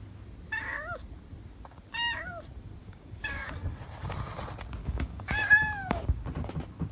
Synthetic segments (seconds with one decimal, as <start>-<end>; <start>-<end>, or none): 2.8-3.5; 4.8-6.2